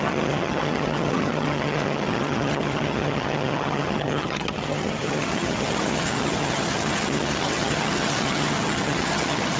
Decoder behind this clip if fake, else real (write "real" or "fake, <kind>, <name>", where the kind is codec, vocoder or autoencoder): fake, vocoder, HiFi-GAN